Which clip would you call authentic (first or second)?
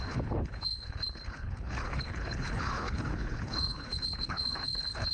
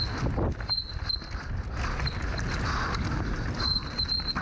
second